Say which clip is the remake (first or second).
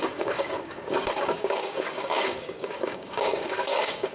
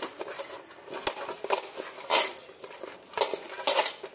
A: first